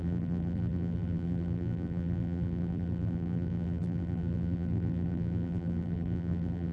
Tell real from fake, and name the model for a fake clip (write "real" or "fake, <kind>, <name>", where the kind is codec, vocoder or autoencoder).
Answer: fake, vocoder, BigVGAN v2